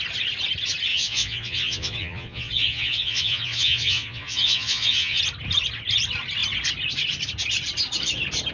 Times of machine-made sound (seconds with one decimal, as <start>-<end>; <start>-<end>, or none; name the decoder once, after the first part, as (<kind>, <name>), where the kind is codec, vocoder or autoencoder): 0.9-5.2 (vocoder, Vocos)